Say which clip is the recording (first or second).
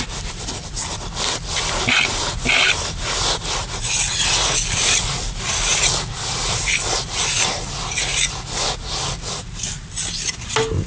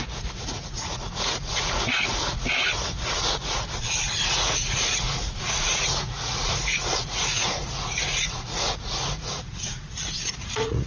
first